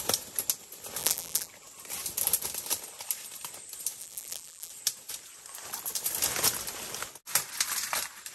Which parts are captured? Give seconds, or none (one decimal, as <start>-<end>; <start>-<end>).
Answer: 0.0-1.0; 1.5-4.0; 4.7-8.3